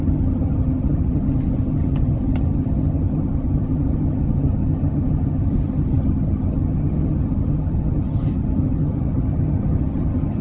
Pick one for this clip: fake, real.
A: fake